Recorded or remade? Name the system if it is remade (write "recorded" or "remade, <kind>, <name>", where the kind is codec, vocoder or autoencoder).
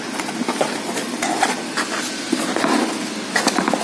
recorded